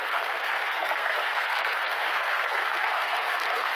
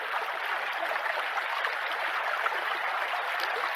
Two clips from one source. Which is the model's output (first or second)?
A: first